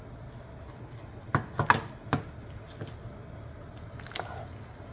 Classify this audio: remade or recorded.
recorded